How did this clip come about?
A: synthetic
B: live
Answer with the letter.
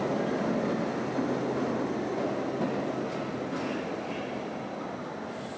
B